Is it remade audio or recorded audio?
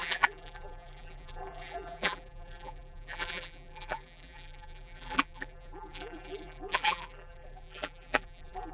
remade